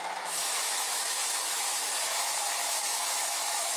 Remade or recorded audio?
remade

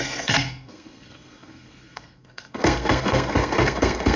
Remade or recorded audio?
remade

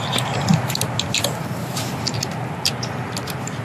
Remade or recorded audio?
recorded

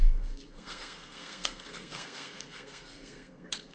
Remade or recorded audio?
remade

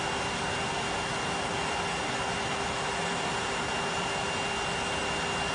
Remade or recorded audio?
recorded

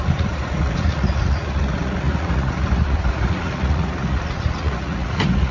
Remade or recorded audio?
remade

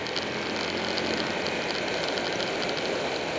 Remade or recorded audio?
recorded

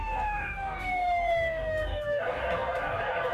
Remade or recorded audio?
remade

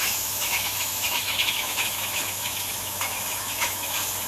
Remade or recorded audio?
remade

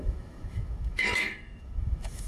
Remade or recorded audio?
remade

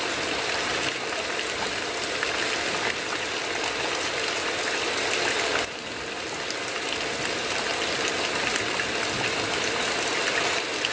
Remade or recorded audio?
recorded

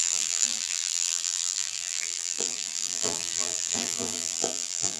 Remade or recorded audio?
remade